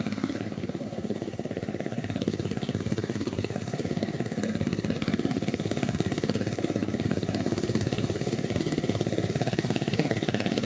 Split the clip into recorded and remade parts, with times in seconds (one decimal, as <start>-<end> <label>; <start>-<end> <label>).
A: 0.0-10.7 remade